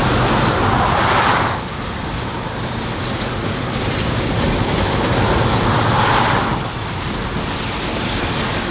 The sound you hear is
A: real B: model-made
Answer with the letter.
A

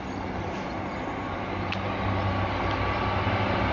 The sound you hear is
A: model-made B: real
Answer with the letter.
B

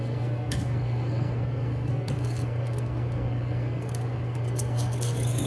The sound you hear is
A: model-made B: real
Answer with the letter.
A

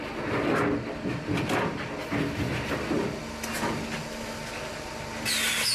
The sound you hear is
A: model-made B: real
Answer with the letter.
B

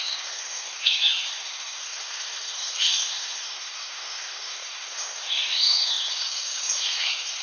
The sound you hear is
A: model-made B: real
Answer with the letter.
A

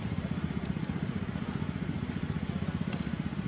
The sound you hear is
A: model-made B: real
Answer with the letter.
B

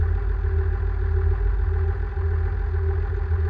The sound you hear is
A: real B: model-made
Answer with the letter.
A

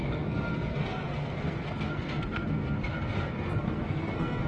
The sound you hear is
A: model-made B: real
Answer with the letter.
A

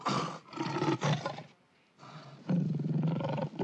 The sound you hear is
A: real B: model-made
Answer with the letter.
A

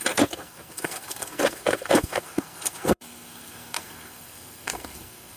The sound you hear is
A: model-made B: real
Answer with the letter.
A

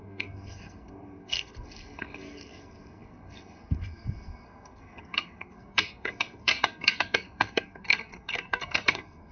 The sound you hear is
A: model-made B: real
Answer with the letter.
A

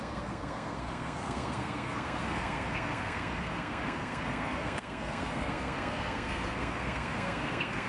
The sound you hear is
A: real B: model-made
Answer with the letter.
B